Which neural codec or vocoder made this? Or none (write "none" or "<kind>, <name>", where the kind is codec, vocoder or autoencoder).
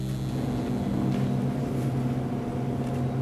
none